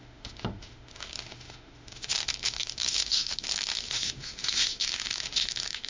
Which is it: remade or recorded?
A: remade